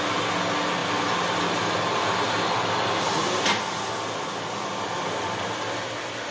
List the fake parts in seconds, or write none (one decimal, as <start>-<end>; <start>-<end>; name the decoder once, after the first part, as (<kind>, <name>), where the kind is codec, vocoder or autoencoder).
none